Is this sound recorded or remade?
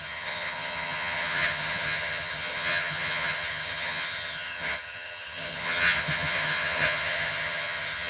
remade